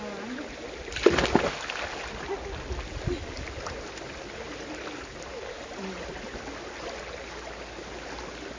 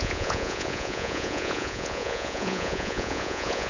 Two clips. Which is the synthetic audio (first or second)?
second